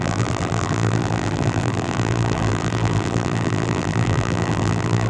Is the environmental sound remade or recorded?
remade